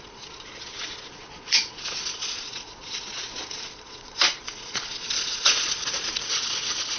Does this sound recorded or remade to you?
remade